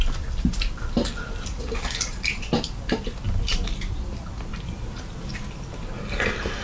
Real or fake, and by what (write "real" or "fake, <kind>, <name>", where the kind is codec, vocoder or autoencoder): real